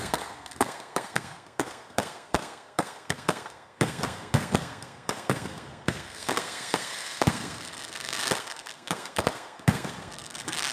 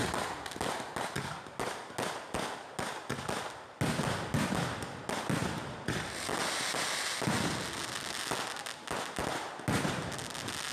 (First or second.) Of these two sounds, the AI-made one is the first